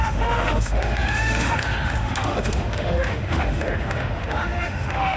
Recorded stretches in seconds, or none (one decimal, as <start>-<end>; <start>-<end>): none